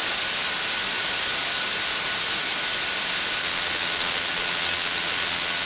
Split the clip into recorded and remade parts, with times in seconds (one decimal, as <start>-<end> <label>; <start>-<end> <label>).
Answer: 0.0-3.4 recorded; 3.4-5.7 remade